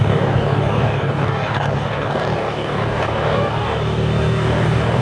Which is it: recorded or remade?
remade